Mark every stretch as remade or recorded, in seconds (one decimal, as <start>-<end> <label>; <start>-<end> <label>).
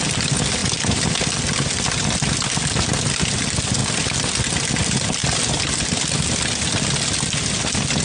0.0-8.0 recorded